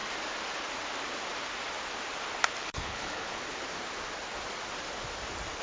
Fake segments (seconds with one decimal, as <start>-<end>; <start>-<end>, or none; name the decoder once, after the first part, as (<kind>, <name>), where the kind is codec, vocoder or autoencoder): 2.6-3.4 (codec, HILCodec)